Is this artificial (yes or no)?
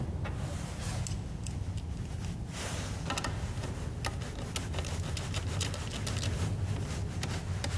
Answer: no